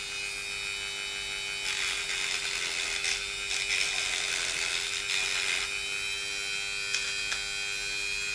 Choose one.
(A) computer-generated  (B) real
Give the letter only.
B